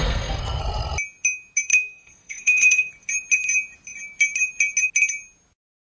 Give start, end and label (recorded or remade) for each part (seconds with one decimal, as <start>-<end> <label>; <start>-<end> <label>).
0.0-0.6 remade; 0.6-1.7 recorded; 1.7-2.9 remade; 2.9-5.9 recorded